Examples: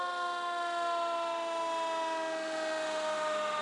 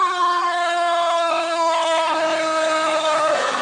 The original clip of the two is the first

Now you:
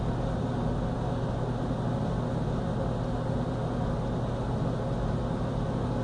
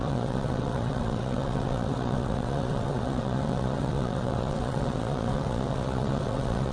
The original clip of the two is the first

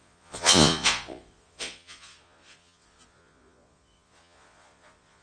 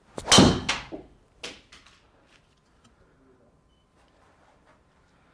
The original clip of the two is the second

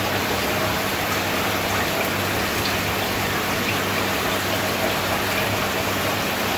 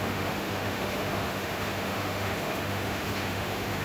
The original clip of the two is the first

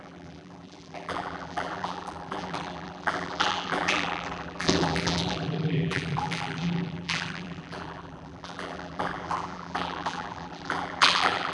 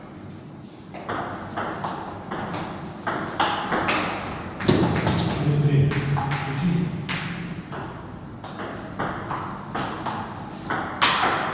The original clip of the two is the second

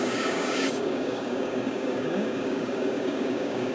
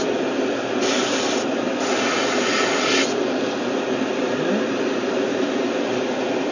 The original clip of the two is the second